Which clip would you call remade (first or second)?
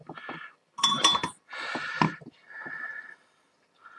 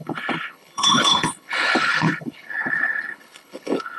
second